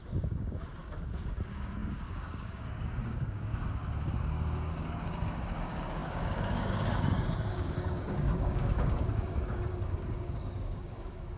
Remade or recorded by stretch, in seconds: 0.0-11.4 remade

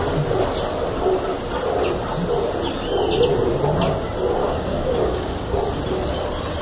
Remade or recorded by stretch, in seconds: 0.0-4.4 recorded; 4.4-5.6 remade; 5.6-6.6 recorded

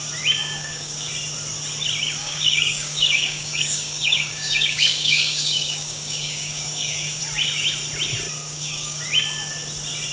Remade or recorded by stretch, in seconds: 0.0-0.4 recorded; 0.4-1.1 remade; 1.1-2.2 recorded; 2.2-7.2 remade; 7.2-8.4 recorded; 8.4-9.0 remade; 9.0-10.1 recorded

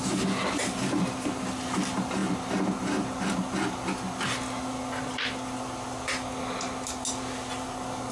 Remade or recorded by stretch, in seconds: 0.0-8.1 recorded